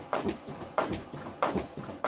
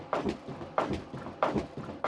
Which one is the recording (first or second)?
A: second